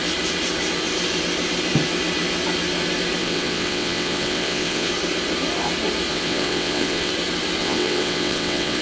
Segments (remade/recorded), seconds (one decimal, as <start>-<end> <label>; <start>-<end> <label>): 0.0-3.2 recorded; 3.2-4.9 remade; 4.9-6.1 recorded; 6.1-7.1 remade; 7.1-7.6 recorded; 7.6-8.8 remade